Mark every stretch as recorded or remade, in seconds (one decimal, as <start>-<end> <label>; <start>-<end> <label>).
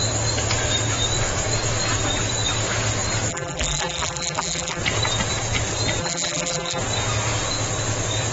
0.0-3.3 recorded; 3.3-4.8 remade; 4.8-6.0 recorded; 6.0-6.8 remade; 6.8-8.3 recorded